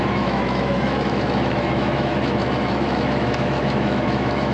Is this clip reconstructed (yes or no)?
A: yes